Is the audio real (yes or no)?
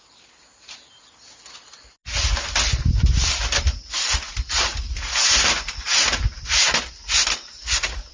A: yes